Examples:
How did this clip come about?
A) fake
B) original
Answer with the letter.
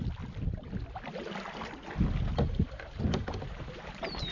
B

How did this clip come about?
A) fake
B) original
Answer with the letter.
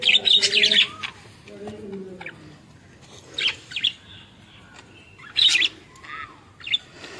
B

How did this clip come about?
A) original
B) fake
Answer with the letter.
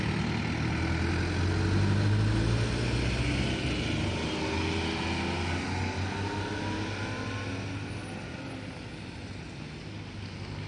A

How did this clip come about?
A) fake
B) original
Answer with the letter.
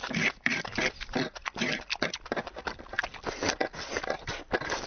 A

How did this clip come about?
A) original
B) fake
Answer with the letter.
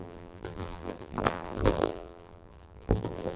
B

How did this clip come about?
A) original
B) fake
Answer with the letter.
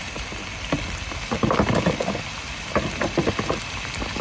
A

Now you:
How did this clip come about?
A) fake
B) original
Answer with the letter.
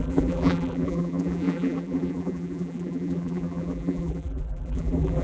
A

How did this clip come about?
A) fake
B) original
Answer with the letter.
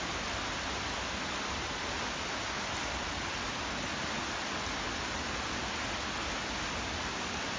B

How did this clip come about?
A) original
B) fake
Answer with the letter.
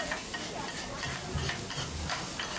A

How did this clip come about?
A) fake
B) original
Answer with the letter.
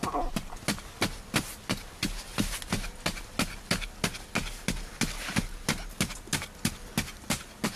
B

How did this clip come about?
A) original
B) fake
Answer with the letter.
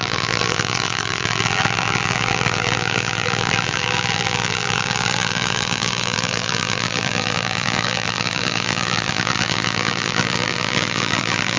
B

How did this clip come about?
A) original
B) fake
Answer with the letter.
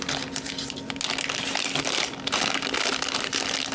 A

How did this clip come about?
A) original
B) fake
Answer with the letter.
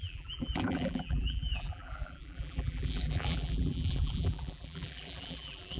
B